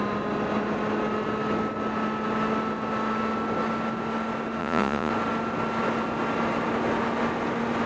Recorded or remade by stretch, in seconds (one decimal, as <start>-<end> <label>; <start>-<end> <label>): 0.0-4.6 recorded; 4.6-5.1 remade; 5.1-7.9 recorded